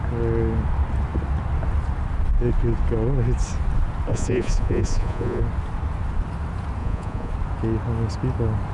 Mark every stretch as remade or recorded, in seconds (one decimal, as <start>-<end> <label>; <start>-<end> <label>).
0.0-4.1 recorded; 4.1-5.4 remade; 5.4-6.8 recorded; 6.8-7.3 remade; 7.3-8.7 recorded